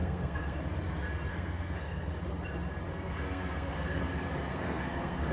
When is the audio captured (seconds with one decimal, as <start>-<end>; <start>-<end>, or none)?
0.6-1.3; 2.1-2.9; 4.0-4.5